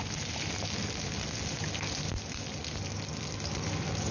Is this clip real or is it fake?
real